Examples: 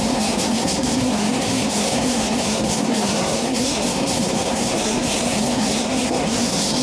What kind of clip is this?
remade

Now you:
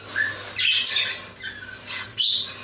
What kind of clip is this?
recorded